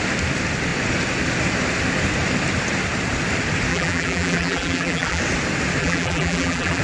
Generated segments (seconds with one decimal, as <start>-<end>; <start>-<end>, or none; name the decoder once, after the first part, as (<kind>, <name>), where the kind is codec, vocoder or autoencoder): 3.7-5.2 (vocoder, BigVGAN v2); 5.8-6.8

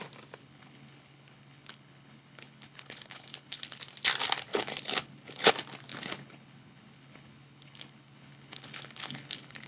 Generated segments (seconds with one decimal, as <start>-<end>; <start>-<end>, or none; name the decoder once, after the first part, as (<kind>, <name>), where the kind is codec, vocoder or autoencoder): 0.4-3.8 (codec, HILCodec); 4.5-5.5; 5.9-9.7

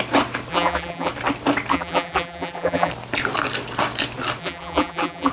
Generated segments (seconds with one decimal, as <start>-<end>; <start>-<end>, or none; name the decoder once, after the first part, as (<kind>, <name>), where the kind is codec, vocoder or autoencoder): 0.5-1.1 (vocoder, BigVGAN v2); 1.7-2.9; 4.4-5.3

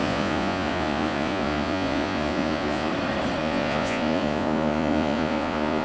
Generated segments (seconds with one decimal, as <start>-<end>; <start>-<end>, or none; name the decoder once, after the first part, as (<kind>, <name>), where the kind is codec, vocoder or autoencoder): 0.0-2.9 (vocoder, Vocos); 3.4-5.8

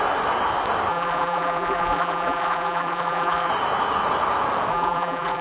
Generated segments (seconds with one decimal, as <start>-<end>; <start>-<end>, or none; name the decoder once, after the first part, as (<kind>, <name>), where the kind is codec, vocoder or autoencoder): 0.9-3.5 (vocoder, BigVGAN v2); 4.7-5.4

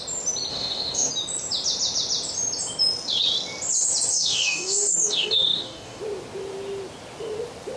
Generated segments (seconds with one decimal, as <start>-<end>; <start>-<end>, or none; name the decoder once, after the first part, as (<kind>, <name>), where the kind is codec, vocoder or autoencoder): 0.5-1.1 (codec, DAC); 4.1-6.0

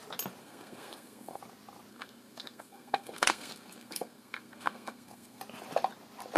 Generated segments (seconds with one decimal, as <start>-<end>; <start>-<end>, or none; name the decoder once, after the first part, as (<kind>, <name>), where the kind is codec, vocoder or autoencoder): 0.4-1.4 (codec, SNAC); 1.9-5.4